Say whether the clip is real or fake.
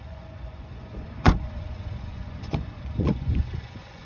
fake